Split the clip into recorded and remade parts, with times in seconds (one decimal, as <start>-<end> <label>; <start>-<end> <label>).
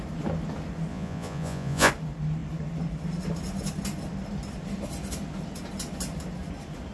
0.0-0.9 recorded; 0.9-1.9 remade; 1.9-6.9 recorded